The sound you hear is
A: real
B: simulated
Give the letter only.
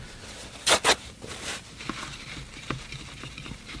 A